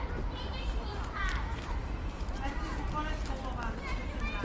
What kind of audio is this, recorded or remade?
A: recorded